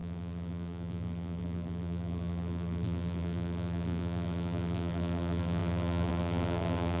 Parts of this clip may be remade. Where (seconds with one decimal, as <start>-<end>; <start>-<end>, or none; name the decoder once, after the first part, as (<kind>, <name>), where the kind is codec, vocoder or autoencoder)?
0.0-7.0 (vocoder, BigVGAN v2)